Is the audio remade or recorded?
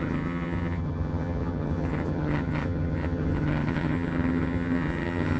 remade